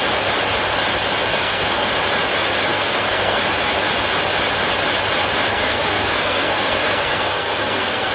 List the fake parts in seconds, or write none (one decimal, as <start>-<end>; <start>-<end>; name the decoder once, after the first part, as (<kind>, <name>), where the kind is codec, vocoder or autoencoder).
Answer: 1.3-1.9 (codec, SNAC); 2.7-3.4; 5.5-8.1